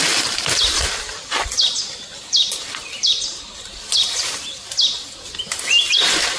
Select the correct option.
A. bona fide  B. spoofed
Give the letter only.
A